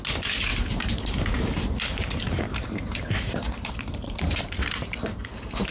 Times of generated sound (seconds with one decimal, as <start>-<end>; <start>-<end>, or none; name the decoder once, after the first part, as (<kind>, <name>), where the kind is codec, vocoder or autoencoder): 0.5-1.8 (vocoder, BigVGAN v2); 2.2-5.7